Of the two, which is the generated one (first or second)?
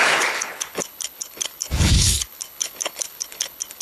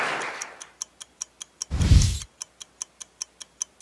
first